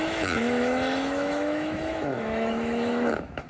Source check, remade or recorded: remade